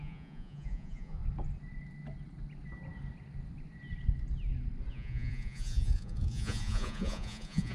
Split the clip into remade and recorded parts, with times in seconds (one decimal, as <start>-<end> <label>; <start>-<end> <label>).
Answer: 0.0-1.2 remade; 1.2-4.9 recorded; 4.9-7.7 remade

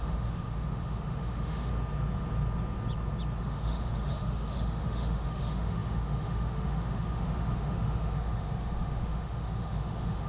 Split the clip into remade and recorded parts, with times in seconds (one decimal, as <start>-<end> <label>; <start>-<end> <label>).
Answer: 0.0-1.7 remade; 1.7-3.4 recorded; 3.4-10.3 remade

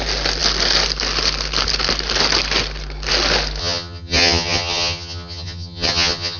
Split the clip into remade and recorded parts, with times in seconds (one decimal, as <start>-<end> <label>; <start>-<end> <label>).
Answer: 0.0-3.6 recorded; 3.6-6.4 remade